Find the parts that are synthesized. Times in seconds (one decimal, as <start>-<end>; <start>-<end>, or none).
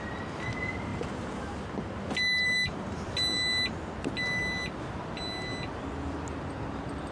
none